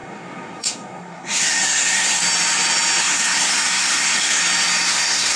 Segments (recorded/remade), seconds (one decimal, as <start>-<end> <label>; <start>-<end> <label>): 0.0-2.2 remade; 2.2-3.0 recorded; 3.0-4.4 remade; 4.4-4.9 recorded; 4.9-5.4 remade